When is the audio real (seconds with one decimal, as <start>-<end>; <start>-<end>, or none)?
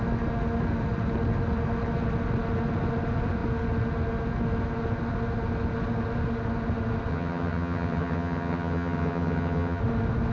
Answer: 0.0-7.1; 9.8-10.3